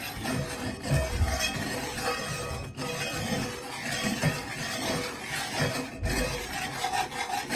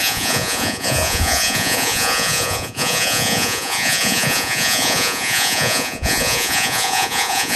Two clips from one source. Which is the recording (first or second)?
first